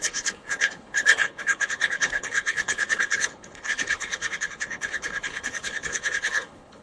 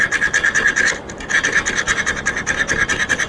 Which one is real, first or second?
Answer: second